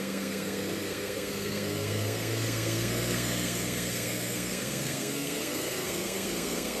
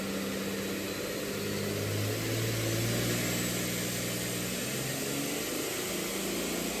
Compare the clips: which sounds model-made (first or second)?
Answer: first